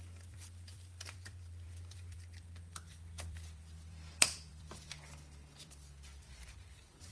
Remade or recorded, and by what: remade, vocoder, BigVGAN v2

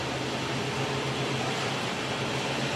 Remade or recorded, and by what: recorded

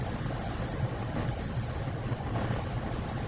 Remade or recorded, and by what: remade, vocoder, BigVGAN v2